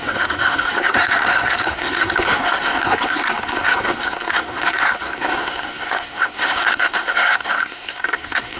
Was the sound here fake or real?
fake